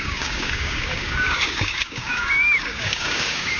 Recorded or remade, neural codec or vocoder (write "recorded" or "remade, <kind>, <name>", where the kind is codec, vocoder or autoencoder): remade, codec, DAC